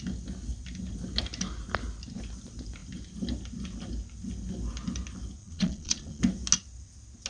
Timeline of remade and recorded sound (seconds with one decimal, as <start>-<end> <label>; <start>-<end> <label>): 0.0-5.4 recorded; 5.4-6.2 remade; 6.2-7.3 recorded